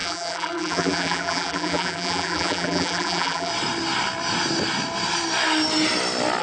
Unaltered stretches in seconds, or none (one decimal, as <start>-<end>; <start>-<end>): 3.5-6.4